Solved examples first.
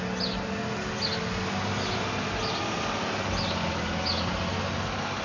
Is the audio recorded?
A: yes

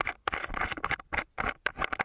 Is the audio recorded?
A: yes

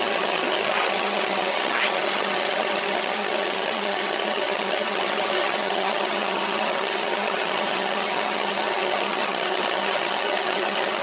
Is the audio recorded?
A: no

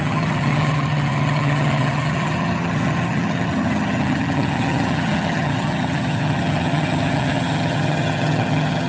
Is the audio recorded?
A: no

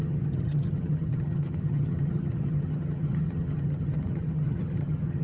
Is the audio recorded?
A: no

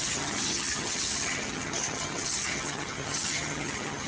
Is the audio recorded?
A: no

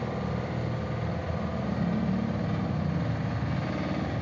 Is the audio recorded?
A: yes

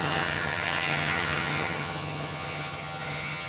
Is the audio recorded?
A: no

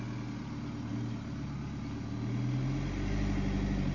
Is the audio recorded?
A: yes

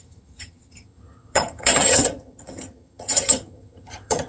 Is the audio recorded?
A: no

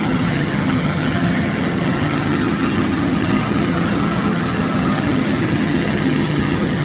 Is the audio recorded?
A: no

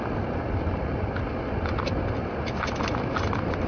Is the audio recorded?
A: yes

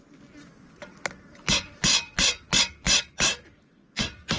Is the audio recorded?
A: yes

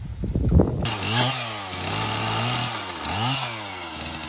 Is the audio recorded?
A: yes